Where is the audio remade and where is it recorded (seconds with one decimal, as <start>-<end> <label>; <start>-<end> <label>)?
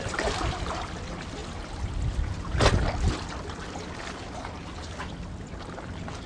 0.0-6.3 recorded